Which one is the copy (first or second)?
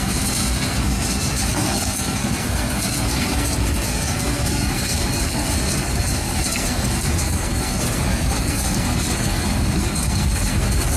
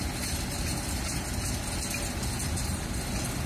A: first